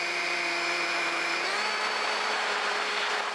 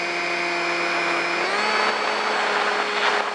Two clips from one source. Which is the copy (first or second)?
first